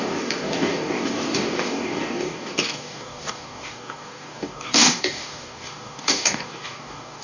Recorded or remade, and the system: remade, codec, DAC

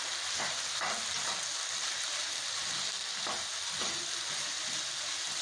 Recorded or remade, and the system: recorded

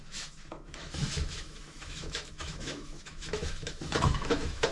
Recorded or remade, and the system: remade, autoencoder, DAC-VAE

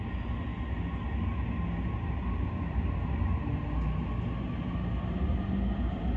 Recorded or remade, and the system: recorded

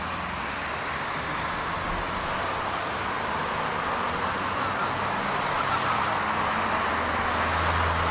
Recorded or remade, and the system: recorded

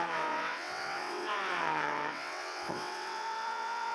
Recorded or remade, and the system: remade, vocoder, WaveNeXt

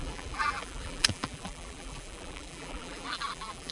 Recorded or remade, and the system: remade, vocoder, BigVGAN v2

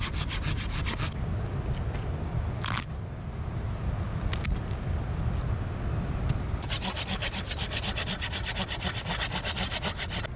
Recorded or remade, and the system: recorded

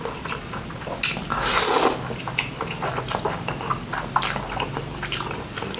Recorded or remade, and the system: recorded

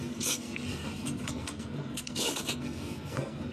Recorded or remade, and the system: remade, codec, SNAC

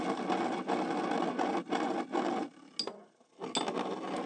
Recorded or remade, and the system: recorded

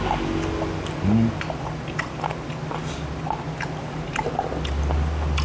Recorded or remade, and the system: recorded